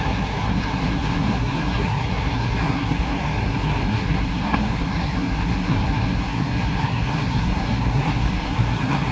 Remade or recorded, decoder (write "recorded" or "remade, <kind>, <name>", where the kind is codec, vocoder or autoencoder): remade, codec, SNAC